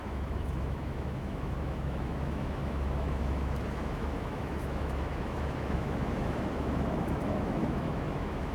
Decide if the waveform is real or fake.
fake